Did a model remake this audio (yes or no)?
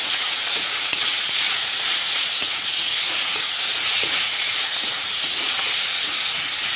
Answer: yes